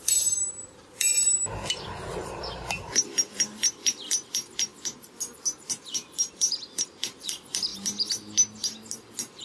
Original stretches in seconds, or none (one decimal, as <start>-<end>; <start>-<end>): 4.7-6.3; 7.7-9.4